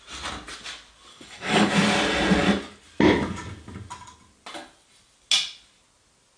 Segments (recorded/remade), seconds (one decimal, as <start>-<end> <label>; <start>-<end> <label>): 0.0-1.1 recorded; 1.1-1.7 remade; 1.7-6.4 recorded